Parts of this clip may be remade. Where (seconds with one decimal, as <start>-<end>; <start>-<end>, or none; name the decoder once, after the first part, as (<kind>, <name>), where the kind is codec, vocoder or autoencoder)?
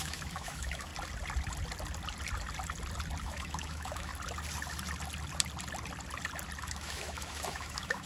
0.0-0.9 (autoencoder, DAC-VAE); 3.2-4.1; 6.6-8.1